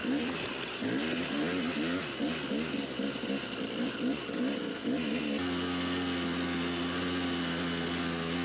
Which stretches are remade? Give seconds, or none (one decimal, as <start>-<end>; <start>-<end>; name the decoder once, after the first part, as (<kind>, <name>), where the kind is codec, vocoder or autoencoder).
0.0-0.5 (vocoder, BigVGAN v2)